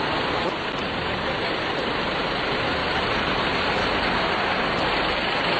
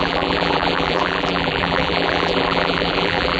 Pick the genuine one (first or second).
first